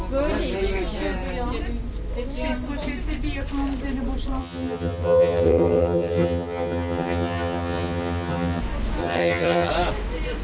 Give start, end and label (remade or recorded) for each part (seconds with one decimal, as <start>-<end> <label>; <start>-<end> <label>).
0.0-4.4 recorded; 4.4-8.6 remade; 8.6-9.0 recorded; 9.0-9.7 remade; 9.7-10.4 recorded